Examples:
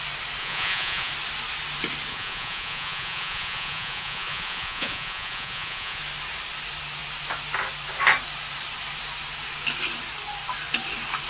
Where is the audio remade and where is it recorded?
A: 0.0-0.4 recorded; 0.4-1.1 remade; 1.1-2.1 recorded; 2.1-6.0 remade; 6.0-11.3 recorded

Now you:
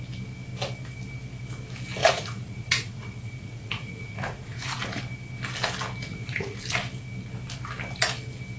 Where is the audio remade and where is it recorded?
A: 0.0-2.0 recorded; 2.0-5.0 remade; 5.0-6.1 recorded; 6.1-6.6 remade; 6.6-8.6 recorded

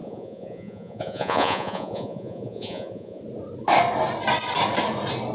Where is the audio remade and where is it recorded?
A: 0.0-3.2 remade; 3.2-5.3 recorded

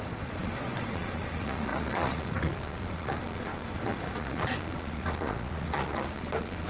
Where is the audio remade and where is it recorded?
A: 0.0-6.7 remade

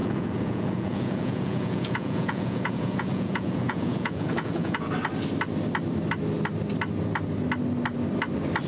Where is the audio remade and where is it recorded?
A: 0.0-4.9 remade; 4.9-8.7 recorded